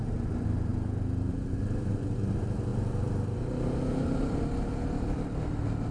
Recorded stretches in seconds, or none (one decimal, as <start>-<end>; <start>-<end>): 0.0-5.9